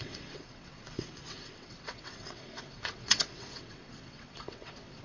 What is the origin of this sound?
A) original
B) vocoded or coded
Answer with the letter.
B